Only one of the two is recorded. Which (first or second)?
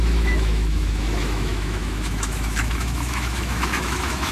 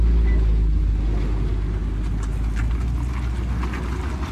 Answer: second